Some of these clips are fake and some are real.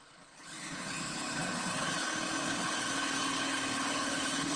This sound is fake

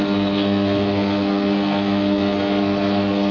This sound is fake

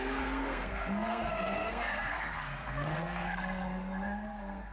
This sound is fake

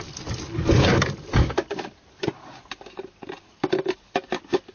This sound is real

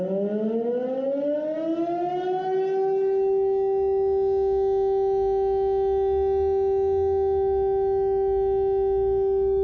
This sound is real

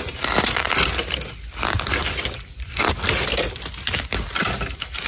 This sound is real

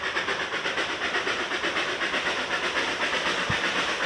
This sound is real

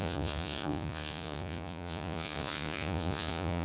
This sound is fake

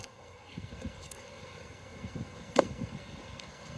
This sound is fake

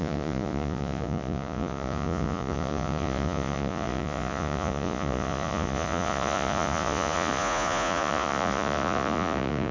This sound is fake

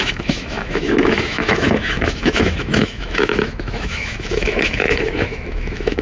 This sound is fake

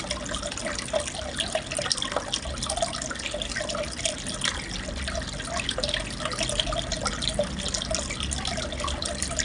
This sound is real